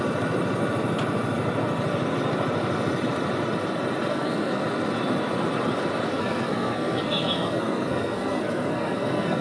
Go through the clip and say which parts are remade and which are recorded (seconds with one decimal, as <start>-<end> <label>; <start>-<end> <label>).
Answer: 0.0-4.1 recorded; 4.1-4.6 remade; 4.6-6.1 recorded; 6.1-9.4 remade